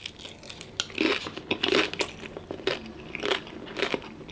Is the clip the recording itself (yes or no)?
yes